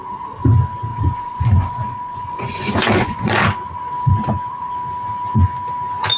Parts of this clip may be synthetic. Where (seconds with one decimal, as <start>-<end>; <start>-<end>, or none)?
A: 0.9-3.4